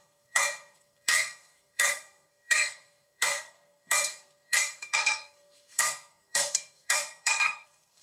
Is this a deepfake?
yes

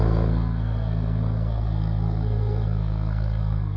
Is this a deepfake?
yes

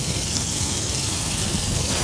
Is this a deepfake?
yes